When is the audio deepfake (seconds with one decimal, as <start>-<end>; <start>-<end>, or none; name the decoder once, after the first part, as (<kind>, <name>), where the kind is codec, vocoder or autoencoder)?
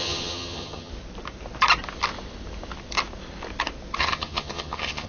0.0-0.9 (vocoder, HiFi-GAN); 4.0-5.1